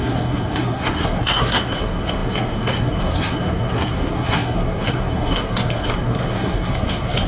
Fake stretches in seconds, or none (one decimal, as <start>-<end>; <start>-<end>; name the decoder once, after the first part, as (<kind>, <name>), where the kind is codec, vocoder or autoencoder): 0.0-7.3 (codec, SNAC)